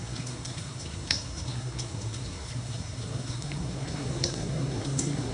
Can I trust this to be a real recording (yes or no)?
no